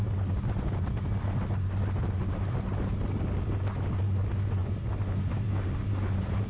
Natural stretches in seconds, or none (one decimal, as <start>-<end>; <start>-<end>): 0.0-6.5